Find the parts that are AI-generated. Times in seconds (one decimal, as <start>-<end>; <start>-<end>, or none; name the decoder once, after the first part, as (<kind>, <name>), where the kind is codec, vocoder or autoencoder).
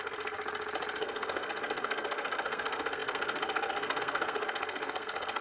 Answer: 0.0-0.4 (codec, SNAC); 1.0-5.4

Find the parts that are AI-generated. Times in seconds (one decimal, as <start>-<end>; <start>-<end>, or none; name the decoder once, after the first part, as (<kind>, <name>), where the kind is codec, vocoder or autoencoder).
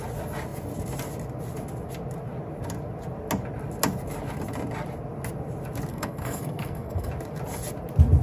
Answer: 5.9-7.1 (codec, SNAC)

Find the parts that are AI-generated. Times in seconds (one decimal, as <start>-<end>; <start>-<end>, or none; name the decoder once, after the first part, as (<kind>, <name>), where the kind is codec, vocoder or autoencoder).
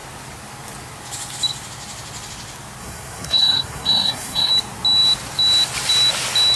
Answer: 2.8-4.5 (codec, SNAC)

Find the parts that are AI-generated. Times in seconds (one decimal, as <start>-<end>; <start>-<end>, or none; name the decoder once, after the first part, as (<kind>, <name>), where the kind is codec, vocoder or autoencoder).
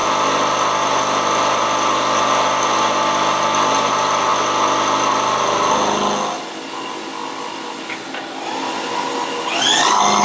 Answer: none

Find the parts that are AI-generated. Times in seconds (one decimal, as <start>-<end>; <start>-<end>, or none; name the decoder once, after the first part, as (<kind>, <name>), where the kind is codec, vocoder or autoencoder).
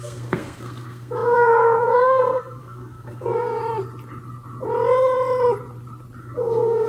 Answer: 0.0-3.6 (codec, SNAC); 6.2-6.9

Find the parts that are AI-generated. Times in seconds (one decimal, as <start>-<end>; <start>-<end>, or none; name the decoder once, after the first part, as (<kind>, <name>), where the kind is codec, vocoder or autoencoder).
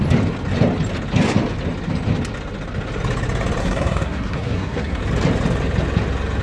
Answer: 3.6-5.0 (codec, SNAC)